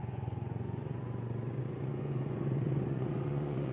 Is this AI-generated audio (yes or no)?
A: yes